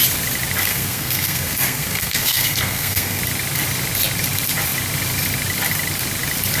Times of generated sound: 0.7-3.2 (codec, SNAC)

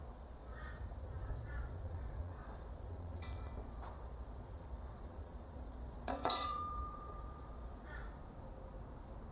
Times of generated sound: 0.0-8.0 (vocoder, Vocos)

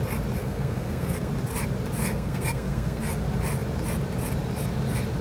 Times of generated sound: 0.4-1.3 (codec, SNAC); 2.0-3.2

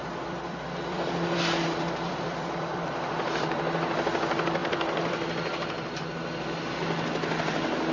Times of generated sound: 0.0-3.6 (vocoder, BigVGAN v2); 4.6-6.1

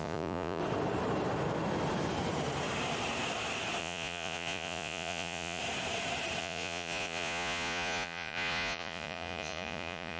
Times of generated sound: 0.0-0.6 (vocoder, Vocos); 3.8-5.6; 6.4-10.2

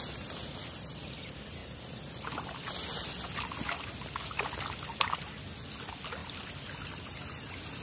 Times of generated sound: none